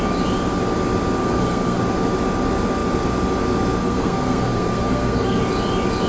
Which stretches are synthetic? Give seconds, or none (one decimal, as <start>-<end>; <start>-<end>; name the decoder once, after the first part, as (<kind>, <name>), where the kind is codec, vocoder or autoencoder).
1.2-1.8 (codec, SNAC); 3.8-5.4